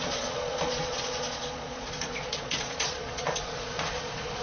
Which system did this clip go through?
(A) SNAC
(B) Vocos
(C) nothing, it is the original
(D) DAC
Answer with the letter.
B